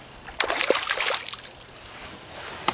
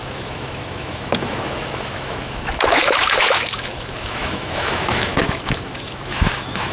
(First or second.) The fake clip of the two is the second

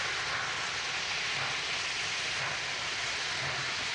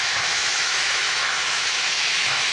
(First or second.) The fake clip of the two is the second